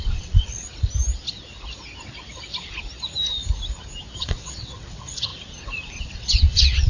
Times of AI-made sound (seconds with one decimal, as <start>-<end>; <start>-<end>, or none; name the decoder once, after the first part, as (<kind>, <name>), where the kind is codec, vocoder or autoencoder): 0.0-0.6 (vocoder, WaveNeXt); 4.2-5.3; 6.0-6.9